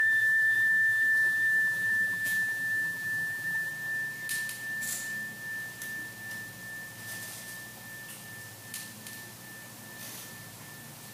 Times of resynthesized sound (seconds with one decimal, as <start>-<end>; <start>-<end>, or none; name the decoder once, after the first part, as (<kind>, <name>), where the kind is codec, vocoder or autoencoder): 0.0-3.7 (vocoder, BigVGAN v2)